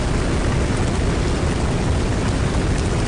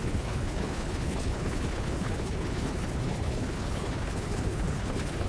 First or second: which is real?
first